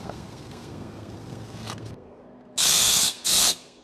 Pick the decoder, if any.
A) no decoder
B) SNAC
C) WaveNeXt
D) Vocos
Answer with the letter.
B